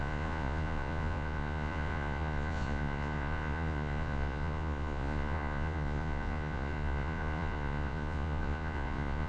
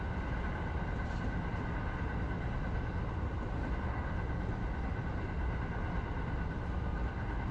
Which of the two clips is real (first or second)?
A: second